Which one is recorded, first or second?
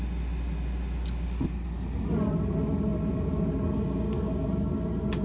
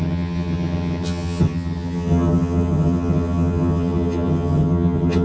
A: first